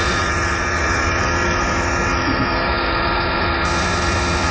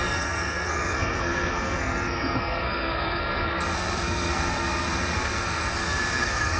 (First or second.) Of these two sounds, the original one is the first